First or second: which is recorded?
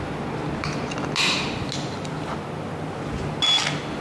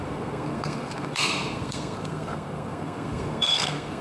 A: first